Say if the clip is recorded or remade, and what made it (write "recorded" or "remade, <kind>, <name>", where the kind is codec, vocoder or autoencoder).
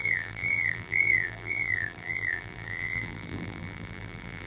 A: remade, vocoder, BigVGAN v2